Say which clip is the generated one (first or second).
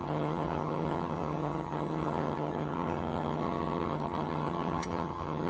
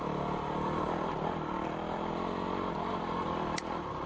first